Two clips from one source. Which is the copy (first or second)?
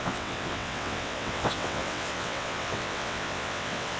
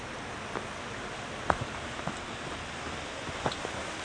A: first